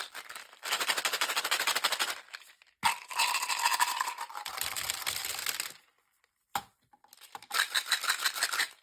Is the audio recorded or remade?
remade